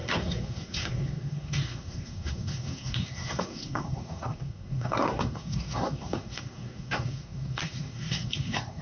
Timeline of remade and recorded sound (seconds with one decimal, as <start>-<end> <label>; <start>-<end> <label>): 0.0-8.8 remade